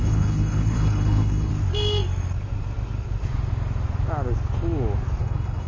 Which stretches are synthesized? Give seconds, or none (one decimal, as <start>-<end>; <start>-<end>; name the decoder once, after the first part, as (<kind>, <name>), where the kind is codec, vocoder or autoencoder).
0.0-1.5 (codec, HILCodec); 5.2-5.7